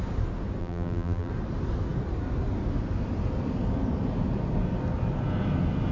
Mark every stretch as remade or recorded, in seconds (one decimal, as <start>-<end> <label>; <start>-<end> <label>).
0.0-0.6 recorded; 0.6-1.3 remade; 1.3-5.9 recorded